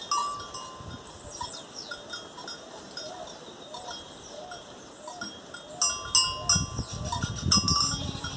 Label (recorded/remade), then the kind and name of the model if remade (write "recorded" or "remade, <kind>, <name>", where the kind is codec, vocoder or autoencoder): recorded